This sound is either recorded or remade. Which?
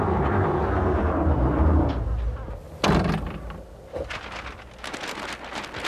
recorded